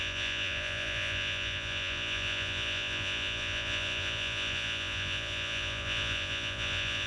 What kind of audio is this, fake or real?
fake